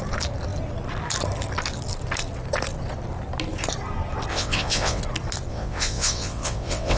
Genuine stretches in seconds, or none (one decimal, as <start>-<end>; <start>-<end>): 0.0-4.3; 5.0-5.5